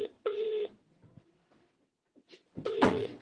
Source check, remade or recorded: remade